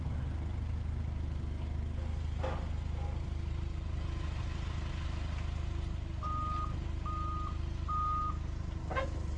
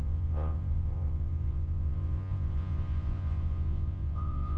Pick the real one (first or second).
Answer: first